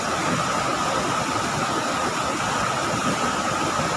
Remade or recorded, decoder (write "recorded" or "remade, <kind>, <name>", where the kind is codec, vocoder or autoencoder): recorded